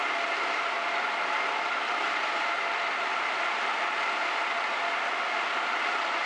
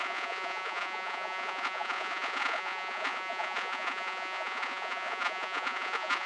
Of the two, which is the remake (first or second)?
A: second